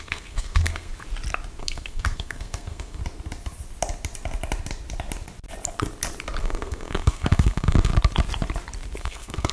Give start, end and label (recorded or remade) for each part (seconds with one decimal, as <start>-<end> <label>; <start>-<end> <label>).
0.0-0.9 remade; 0.9-1.6 recorded; 1.6-3.0 remade; 3.0-6.4 recorded; 6.4-7.9 remade; 7.9-9.0 recorded; 9.0-9.5 remade